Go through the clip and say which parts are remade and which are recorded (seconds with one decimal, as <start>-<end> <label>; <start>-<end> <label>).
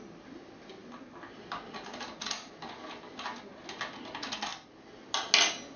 0.0-5.8 recorded